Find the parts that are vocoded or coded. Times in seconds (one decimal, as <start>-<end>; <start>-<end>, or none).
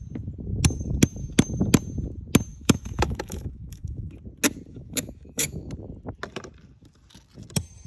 2.5-4.1; 4.7-5.7